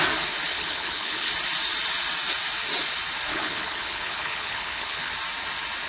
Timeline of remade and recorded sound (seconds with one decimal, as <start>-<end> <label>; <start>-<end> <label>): 0.0-0.5 recorded; 0.5-1.3 remade; 1.3-3.3 recorded; 3.3-5.1 remade; 5.1-5.9 recorded